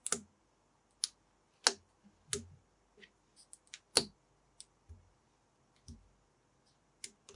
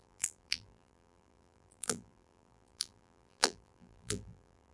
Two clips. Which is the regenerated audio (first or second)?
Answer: second